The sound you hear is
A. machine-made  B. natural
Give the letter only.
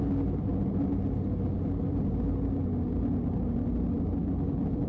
B